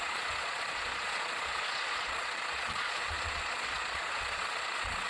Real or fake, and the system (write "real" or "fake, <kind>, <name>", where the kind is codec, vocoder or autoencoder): fake, vocoder, Vocos